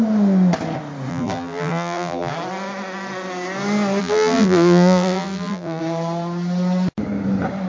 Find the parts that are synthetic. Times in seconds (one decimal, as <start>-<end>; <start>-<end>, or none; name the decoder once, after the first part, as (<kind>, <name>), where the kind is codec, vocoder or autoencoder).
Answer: 1.1-2.3 (vocoder, BigVGAN v2); 4.0-5.8